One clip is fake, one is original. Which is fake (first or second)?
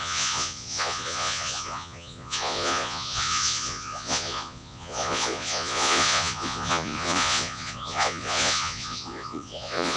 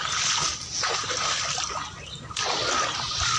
first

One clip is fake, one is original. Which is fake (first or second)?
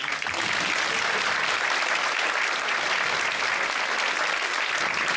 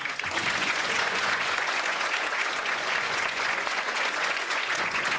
second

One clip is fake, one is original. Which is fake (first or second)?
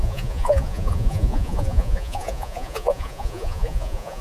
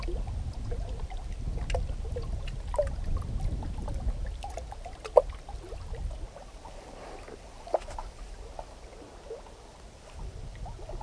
first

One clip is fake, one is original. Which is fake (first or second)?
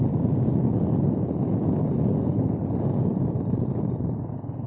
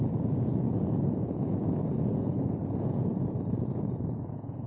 second